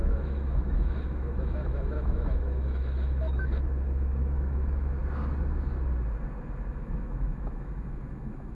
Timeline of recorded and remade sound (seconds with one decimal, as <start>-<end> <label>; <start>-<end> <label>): 0.0-5.0 remade; 5.0-6.7 recorded; 6.7-8.5 remade